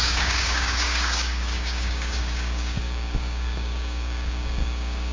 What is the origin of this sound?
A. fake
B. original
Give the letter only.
A